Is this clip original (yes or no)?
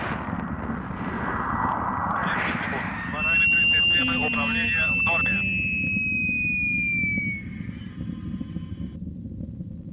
yes